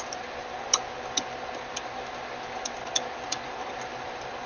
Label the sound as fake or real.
real